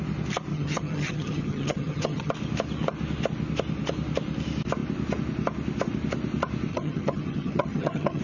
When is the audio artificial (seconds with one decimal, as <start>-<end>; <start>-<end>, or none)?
0.5-2.3; 6.7-8.2